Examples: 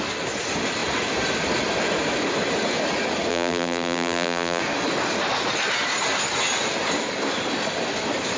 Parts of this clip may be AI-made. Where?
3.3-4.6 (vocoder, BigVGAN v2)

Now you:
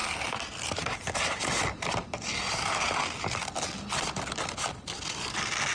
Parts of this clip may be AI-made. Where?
0.0-3.4 (vocoder, BigVGAN v2)

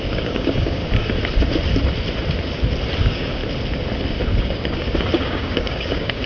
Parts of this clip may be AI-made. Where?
0.0-0.8 (codec, DAC); 3.0-3.4; 4.4-6.3

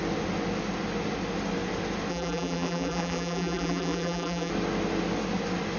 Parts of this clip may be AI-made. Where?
2.1-4.5 (vocoder, BigVGAN v2)

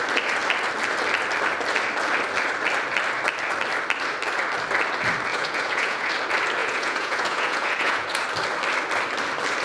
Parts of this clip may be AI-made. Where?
5.3-6.1 (vocoder, Vocos); 6.6-8.2

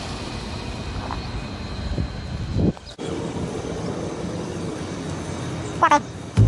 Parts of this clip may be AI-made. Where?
none

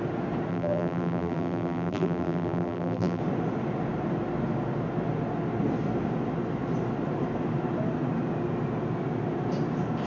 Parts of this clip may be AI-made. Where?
0.5-3.2 (vocoder, BigVGAN v2)